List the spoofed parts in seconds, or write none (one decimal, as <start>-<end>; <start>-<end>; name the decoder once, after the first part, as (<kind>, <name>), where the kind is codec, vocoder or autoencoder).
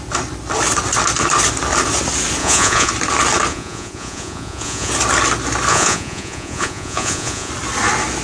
2.4-2.9 (vocoder, Vocos); 3.5-4.9; 5.7-7.5